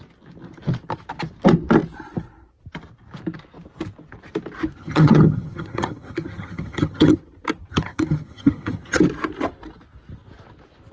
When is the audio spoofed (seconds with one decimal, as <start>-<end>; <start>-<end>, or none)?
4.8-7.2; 7.7-9.0